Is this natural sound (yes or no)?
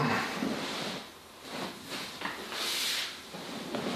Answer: yes